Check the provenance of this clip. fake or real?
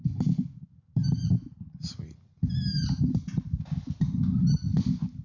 real